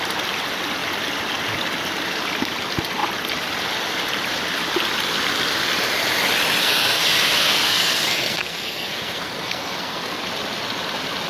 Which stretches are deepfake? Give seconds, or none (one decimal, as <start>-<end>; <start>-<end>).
6.6-10.2